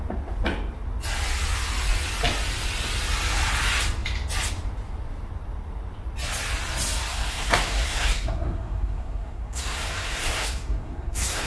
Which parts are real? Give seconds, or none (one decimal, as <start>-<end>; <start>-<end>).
0.0-7.1